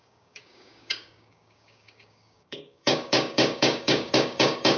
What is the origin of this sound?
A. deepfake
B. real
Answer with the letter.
A